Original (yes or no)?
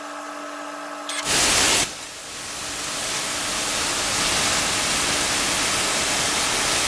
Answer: yes